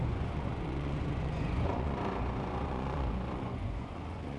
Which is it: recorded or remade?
remade